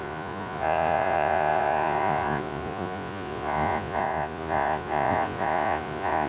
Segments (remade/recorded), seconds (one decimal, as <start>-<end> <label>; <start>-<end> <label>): 0.0-6.3 remade